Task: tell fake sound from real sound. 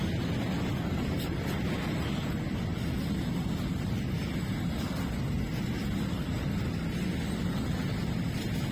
real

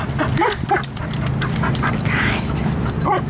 real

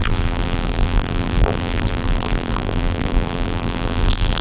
fake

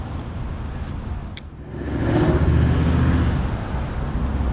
real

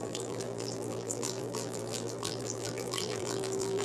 fake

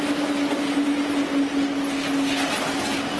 real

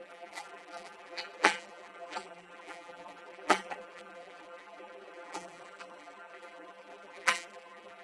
fake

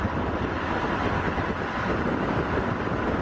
real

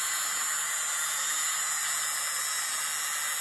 real